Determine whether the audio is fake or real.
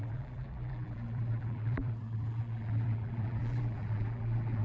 fake